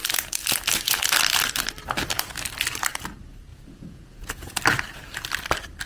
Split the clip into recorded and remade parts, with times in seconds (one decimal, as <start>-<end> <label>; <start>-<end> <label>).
0.0-3.5 recorded; 3.5-4.6 remade; 4.6-5.9 recorded